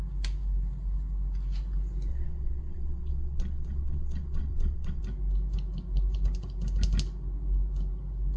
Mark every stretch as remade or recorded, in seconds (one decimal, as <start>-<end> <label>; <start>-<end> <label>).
0.0-2.1 recorded; 2.1-5.0 remade; 5.0-8.4 recorded